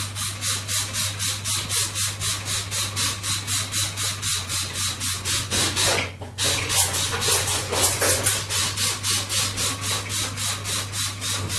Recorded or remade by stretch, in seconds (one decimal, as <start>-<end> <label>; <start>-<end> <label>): 0.0-4.3 recorded; 4.3-8.2 remade; 8.2-11.6 recorded